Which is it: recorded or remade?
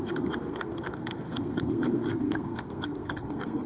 remade